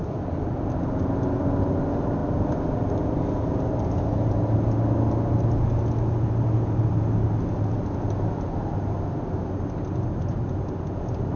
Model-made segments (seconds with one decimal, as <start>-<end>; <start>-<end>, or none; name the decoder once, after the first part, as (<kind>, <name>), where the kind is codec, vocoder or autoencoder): none